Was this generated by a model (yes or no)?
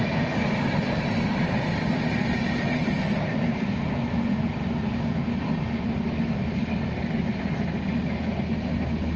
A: no